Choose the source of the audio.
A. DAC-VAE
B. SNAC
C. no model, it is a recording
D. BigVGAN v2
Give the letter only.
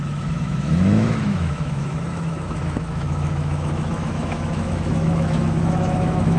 A